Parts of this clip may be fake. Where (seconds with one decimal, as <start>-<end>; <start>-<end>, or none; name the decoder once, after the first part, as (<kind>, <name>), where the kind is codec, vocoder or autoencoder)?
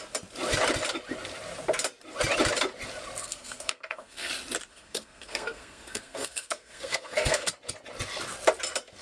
3.2-4.3 (codec, SNAC); 4.7-7.5